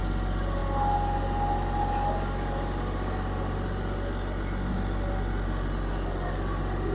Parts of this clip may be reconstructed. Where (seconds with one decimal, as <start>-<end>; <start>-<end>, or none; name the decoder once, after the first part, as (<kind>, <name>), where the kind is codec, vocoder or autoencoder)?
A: none